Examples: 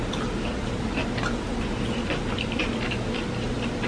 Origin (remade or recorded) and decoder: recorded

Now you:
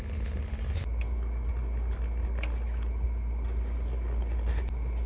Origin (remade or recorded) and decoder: recorded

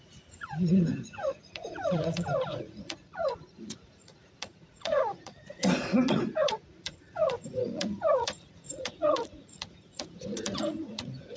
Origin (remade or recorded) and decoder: remade, vocoder, Vocos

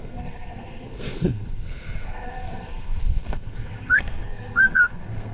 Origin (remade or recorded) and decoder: remade, codec, SNAC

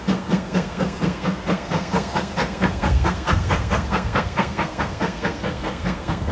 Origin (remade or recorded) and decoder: remade, codec, SNAC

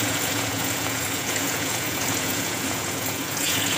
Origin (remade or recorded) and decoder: remade, vocoder, Vocos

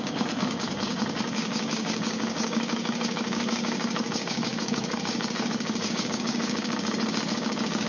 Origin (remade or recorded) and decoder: remade, codec, DAC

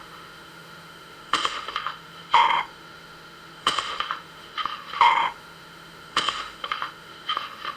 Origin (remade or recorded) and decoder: remade, autoencoder, DAC-VAE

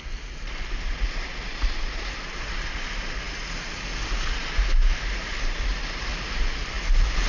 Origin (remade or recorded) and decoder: recorded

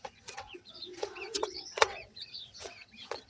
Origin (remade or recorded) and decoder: remade, vocoder, WaveNeXt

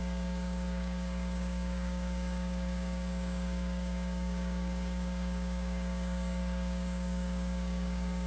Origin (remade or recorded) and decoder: remade, codec, DAC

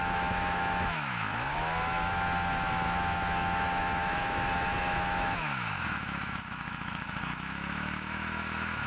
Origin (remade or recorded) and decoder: remade, autoencoder, DAC-VAE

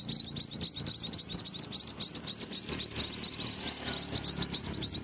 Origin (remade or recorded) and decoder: recorded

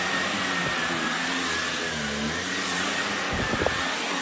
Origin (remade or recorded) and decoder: recorded